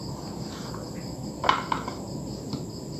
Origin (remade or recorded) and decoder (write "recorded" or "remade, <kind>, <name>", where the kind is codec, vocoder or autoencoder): recorded